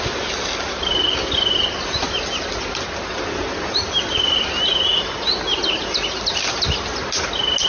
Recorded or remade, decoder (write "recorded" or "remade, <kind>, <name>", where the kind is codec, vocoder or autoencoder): recorded